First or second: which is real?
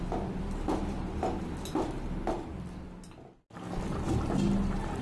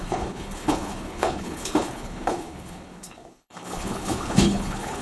first